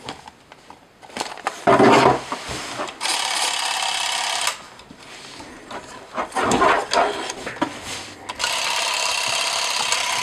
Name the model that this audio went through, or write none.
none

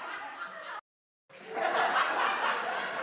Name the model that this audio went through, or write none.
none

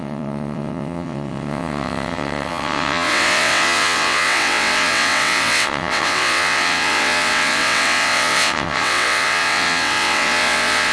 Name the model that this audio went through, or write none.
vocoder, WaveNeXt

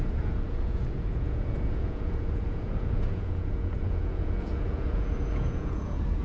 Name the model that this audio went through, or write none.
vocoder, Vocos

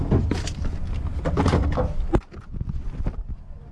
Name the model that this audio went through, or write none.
none